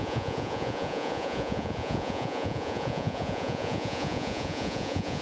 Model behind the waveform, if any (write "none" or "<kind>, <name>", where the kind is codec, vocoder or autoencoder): vocoder, Vocos